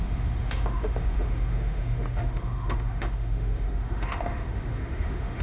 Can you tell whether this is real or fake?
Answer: fake